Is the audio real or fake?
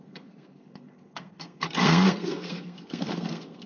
fake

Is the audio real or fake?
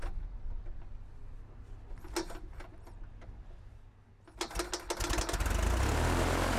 real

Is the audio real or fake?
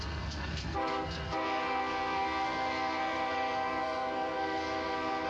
fake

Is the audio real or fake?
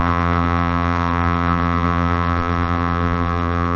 fake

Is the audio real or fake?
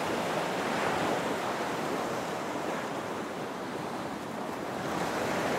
real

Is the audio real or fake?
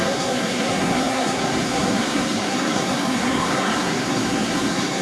fake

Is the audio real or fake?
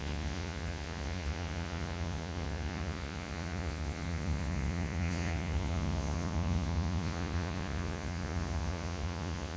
fake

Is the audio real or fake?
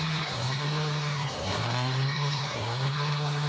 fake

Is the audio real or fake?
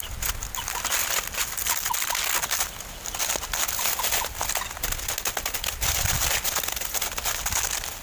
real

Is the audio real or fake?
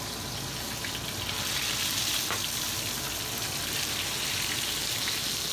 real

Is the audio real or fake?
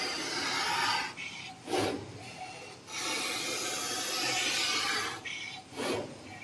real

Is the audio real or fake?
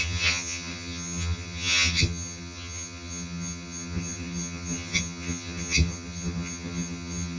fake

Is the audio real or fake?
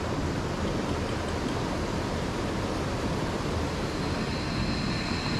real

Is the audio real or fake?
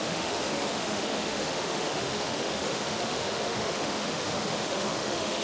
fake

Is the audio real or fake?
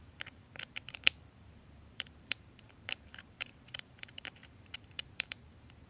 fake